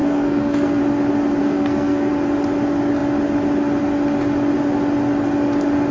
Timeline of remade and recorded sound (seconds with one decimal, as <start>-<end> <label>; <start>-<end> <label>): 0.0-0.8 remade; 0.8-1.4 recorded; 1.4-2.1 remade; 2.1-5.9 recorded